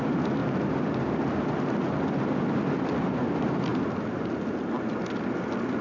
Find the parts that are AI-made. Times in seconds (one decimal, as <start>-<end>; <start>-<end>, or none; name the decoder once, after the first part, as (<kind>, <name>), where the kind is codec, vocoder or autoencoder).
none